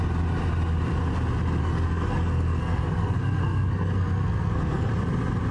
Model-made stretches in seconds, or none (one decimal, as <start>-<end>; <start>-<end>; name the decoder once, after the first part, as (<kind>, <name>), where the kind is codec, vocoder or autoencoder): 1.6-4.9 (codec, SNAC)